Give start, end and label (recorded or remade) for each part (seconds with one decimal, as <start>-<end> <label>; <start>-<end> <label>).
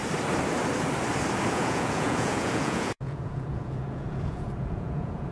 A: 0.0-1.5 recorded; 1.5-5.3 remade